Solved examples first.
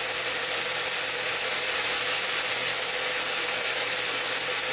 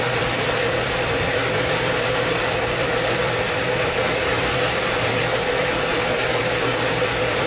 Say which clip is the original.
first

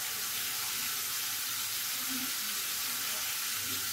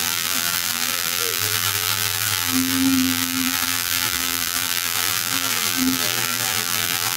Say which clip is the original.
first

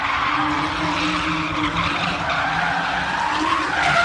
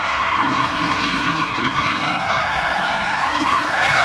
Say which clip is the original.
first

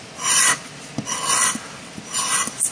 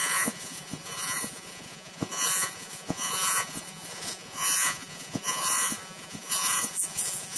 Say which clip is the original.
first